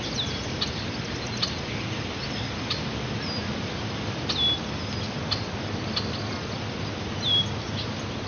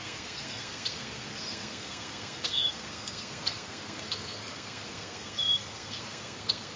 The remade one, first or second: second